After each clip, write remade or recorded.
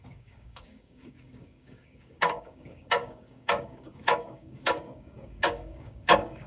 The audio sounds remade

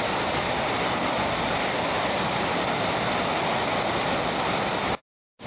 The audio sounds recorded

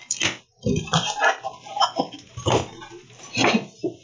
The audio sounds recorded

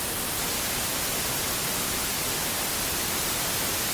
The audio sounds recorded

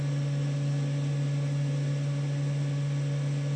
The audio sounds recorded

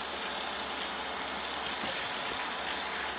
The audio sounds recorded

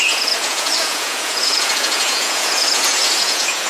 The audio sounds remade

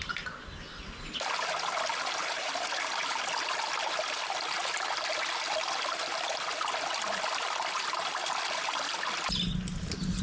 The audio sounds recorded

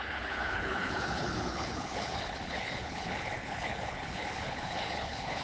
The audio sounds remade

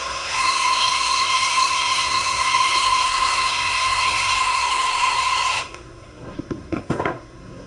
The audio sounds remade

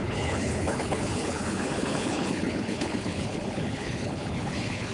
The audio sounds remade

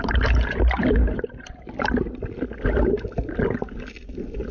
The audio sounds recorded